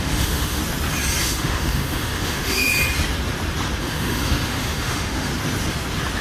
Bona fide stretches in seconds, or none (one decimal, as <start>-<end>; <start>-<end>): 0.6-1.2; 2.7-3.8; 5.3-6.2